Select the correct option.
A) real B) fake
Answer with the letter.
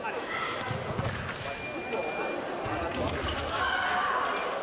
A